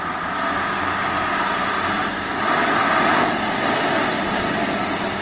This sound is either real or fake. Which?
real